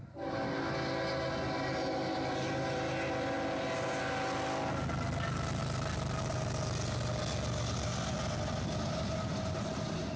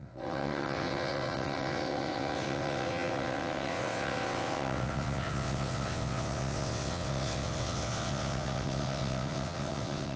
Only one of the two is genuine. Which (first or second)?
first